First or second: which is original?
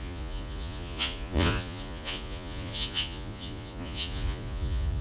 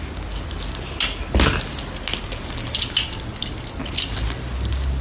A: second